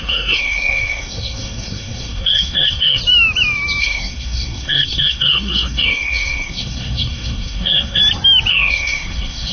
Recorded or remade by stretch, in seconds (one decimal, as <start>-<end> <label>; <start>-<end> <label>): 0.0-3.0 remade; 3.0-3.8 recorded; 3.8-8.0 remade; 8.0-8.5 recorded; 8.5-9.5 remade